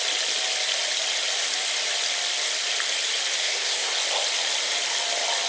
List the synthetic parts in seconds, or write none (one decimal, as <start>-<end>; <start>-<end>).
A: 3.4-3.9